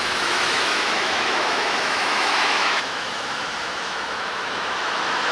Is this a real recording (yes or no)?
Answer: no